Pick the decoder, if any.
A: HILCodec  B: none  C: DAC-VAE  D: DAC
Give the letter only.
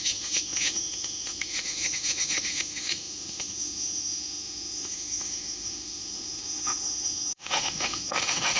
C